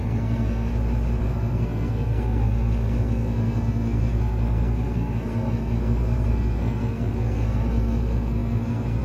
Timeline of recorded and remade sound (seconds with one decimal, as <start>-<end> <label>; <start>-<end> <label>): 0.0-0.7 remade; 0.7-1.2 recorded; 1.2-9.0 remade